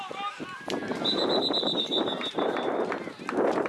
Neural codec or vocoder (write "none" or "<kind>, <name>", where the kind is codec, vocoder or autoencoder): none